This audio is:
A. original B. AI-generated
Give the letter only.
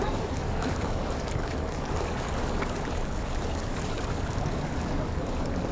B